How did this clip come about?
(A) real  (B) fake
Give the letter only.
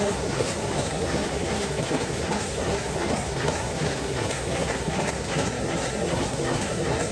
B